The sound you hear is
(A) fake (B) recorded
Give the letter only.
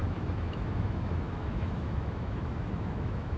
A